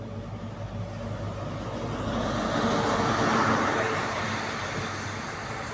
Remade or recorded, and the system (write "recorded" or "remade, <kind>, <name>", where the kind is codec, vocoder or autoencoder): recorded